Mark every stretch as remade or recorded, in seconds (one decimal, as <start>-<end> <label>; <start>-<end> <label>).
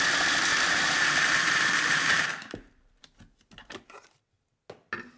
0.0-0.5 recorded; 0.5-3.0 remade; 3.0-5.2 recorded